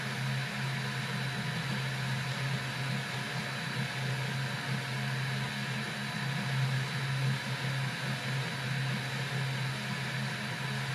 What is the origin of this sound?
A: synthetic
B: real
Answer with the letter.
B